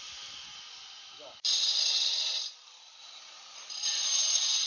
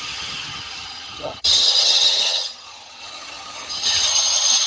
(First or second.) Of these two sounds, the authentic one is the first